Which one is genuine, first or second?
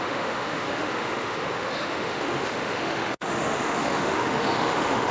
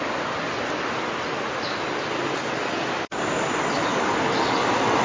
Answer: second